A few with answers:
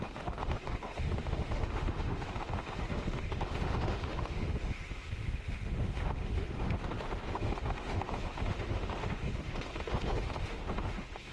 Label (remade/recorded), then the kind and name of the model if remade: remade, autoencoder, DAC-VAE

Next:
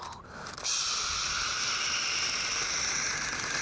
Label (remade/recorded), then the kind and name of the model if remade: recorded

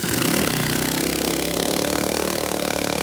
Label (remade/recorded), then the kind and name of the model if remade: remade, codec, SNAC